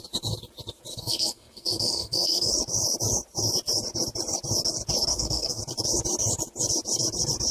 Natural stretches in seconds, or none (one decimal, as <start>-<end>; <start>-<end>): 0.0-0.9; 2.5-5.1; 5.6-7.5